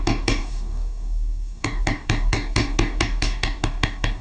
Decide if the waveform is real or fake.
fake